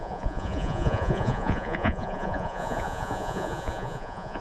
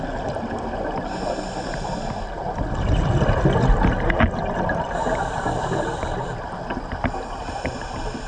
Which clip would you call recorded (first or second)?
second